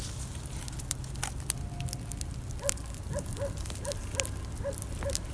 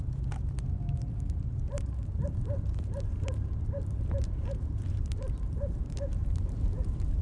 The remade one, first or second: second